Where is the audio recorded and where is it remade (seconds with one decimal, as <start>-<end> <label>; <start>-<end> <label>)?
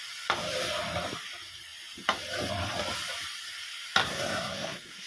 0.0-4.0 recorded; 4.0-5.1 remade